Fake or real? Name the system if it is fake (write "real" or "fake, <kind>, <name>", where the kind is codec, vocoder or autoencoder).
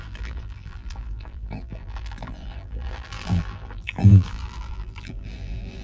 fake, vocoder, BigVGAN v2